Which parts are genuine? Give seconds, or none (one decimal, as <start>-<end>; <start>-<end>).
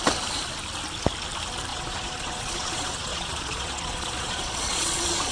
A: 0.0-1.7